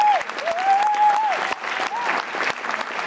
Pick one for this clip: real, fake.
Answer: real